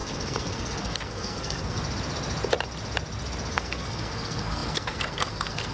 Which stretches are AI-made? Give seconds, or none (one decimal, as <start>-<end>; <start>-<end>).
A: 0.0-1.8; 3.5-5.7